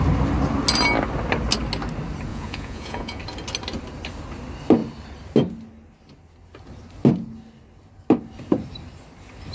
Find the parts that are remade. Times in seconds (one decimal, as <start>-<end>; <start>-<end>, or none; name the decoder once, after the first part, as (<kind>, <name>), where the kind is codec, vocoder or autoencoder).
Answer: 2.3-3.2 (vocoder, Vocos)